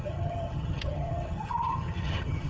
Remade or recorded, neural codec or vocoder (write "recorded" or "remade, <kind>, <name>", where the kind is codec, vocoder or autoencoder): remade, vocoder, HiFi-GAN